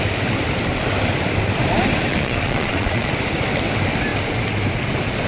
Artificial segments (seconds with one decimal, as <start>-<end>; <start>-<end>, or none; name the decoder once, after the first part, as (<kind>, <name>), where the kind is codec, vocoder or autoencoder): 2.1-3.1 (vocoder, Vocos)